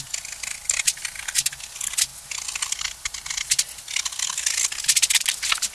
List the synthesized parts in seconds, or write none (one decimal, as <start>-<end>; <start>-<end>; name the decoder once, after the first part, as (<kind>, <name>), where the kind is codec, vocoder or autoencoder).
none